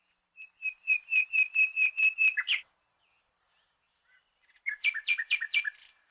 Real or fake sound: fake